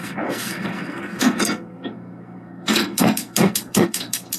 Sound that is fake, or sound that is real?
fake